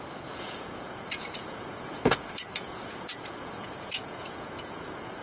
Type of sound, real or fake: fake